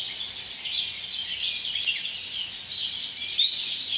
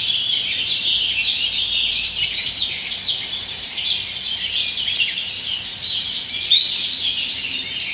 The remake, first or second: second